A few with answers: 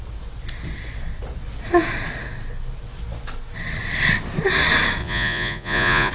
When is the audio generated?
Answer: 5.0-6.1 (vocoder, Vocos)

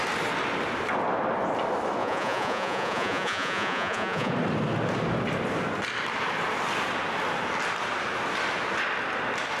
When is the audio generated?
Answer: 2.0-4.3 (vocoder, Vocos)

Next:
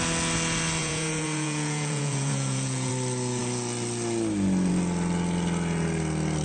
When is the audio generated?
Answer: 0.8-2.9 (vocoder, Vocos)